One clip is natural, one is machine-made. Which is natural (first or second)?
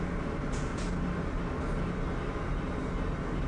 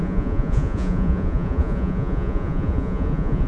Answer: first